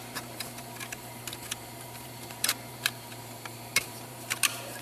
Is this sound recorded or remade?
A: remade